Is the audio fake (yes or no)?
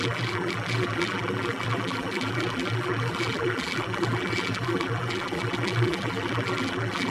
yes